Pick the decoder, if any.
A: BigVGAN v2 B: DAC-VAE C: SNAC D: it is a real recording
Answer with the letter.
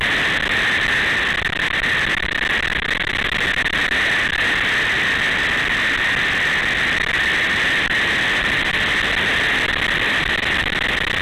D